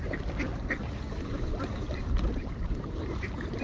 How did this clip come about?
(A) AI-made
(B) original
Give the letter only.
A